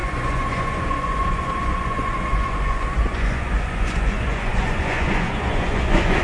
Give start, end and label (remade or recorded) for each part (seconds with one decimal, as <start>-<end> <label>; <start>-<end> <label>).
0.0-6.2 remade